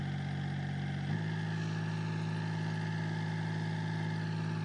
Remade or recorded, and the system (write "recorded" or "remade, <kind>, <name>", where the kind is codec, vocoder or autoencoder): recorded